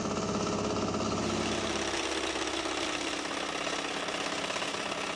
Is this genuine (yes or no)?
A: yes